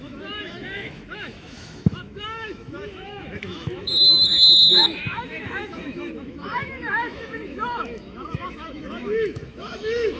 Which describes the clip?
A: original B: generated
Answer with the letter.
B